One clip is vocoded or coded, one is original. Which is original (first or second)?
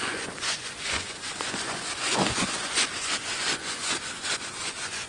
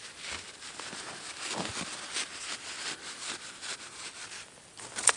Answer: second